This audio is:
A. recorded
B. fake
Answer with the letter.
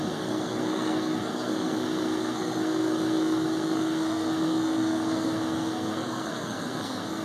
B